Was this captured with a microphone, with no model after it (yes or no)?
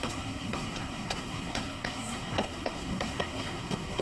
no